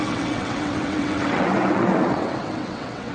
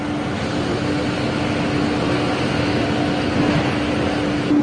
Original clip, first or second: second